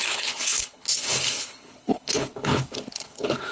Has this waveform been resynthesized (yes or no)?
yes